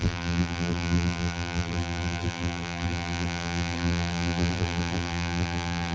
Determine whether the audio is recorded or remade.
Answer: remade